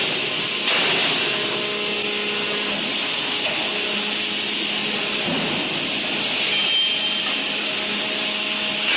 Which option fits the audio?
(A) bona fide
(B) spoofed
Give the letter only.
A